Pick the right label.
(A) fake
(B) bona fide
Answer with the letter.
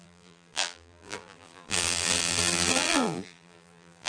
A